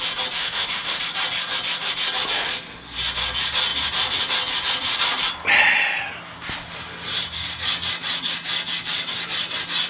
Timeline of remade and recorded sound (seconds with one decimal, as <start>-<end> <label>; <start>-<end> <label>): 0.0-0.4 recorded; 0.4-1.0 remade; 1.0-9.9 recorded